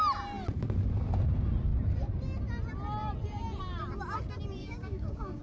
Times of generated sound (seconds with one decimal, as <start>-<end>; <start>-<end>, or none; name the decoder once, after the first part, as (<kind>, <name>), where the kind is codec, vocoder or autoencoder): 4.6-5.4 (codec, DAC)